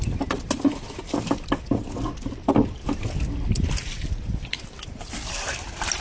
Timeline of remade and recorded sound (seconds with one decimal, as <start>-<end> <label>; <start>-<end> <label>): 0.0-6.0 recorded